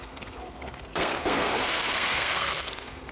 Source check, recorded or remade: remade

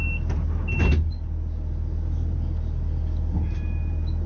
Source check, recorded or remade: recorded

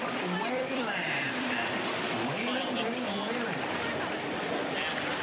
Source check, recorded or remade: remade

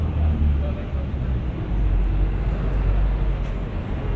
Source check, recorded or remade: recorded